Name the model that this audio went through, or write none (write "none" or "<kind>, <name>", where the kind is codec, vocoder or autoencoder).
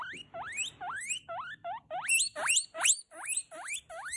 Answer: none